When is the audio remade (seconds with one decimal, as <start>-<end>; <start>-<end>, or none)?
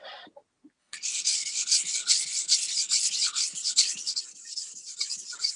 0.8-4.2